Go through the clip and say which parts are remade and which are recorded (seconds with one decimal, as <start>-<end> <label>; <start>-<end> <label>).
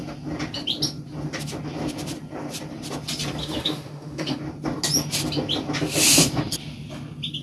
0.0-3.4 recorded; 3.4-4.4 remade; 4.4-7.4 recorded